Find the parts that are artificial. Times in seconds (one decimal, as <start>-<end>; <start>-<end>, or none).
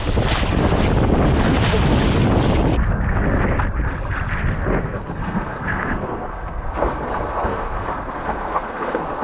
4.8-9.2